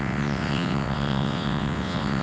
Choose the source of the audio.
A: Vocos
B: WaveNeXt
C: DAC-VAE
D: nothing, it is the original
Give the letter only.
B